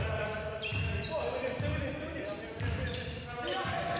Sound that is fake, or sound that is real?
real